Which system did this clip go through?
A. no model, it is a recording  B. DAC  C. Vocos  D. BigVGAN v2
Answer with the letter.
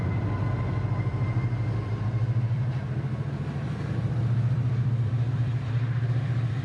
D